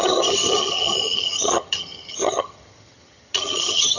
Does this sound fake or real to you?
fake